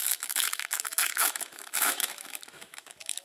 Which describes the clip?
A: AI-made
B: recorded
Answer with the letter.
A